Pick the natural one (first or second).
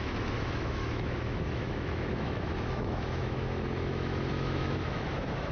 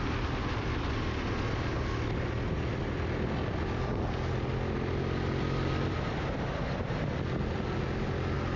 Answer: second